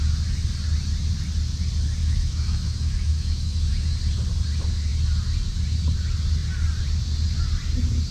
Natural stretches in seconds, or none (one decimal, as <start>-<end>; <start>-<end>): 0.0-2.0; 3.7-8.1